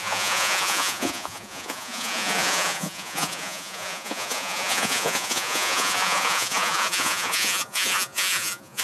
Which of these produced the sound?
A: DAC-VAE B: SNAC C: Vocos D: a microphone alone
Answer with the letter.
C